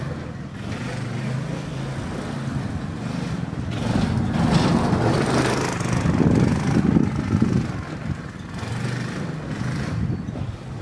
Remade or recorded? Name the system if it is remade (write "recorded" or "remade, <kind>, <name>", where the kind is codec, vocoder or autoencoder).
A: recorded